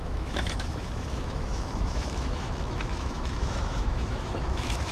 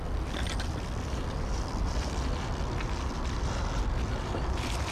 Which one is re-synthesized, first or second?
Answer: first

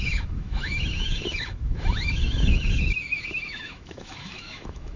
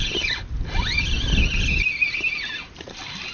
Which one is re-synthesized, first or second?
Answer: first